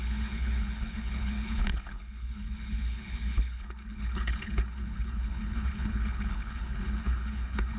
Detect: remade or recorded remade